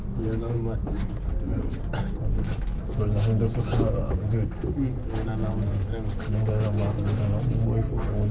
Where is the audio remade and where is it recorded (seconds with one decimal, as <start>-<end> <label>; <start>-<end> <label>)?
0.0-8.3 recorded